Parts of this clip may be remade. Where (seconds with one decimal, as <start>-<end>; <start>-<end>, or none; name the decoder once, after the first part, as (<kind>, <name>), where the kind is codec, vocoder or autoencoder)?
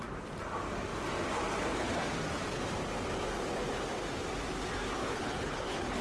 5.0-6.0 (codec, HILCodec)